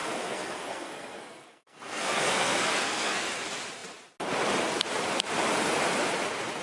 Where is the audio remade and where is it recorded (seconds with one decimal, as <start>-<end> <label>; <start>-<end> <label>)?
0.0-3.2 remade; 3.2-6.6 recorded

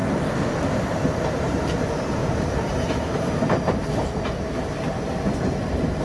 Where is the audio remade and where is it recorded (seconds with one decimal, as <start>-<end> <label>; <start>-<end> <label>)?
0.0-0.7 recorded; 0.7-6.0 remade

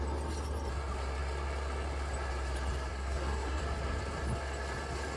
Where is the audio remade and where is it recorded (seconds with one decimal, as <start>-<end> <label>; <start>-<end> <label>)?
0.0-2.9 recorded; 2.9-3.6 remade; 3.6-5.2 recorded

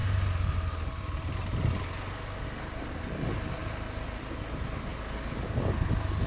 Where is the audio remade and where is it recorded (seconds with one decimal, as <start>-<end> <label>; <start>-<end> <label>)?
0.0-6.3 recorded